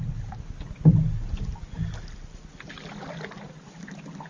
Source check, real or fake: real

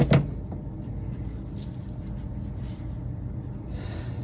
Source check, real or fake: real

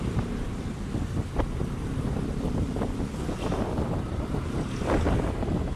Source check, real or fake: real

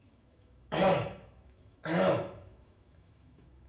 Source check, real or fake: fake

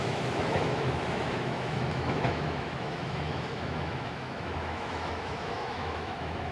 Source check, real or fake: fake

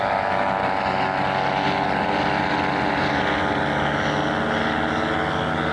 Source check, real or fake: real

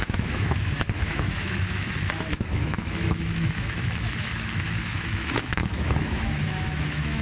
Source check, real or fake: fake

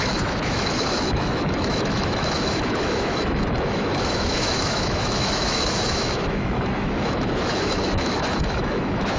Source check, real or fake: fake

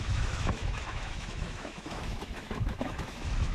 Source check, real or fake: fake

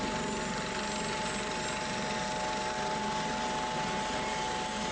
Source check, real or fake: real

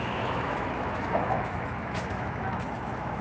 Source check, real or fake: fake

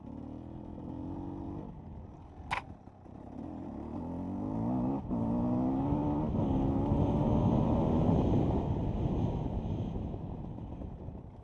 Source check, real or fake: real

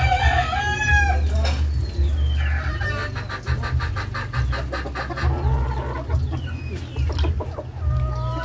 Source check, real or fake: real